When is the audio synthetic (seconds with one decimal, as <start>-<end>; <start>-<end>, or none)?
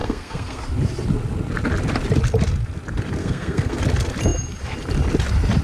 0.0-0.6; 3.2-3.8